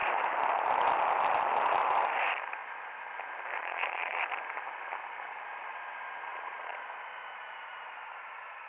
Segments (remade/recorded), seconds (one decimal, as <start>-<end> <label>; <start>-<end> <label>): 0.0-3.6 recorded; 3.6-4.2 remade; 4.2-6.3 recorded; 6.3-6.8 remade; 6.8-8.7 recorded